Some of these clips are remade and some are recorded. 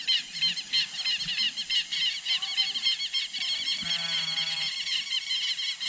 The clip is recorded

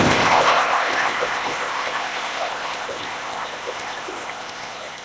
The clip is remade